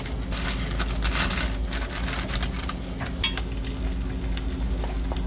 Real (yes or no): yes